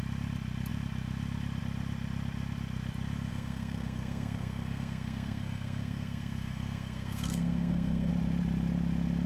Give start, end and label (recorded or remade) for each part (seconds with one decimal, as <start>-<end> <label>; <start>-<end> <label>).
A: 0.0-3.3 recorded; 3.3-8.1 remade; 8.1-9.3 recorded